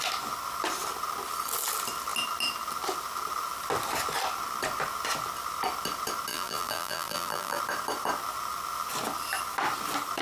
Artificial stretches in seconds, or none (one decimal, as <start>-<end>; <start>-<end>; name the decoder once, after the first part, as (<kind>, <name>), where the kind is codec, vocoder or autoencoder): 6.3-7.6 (vocoder, BigVGAN v2)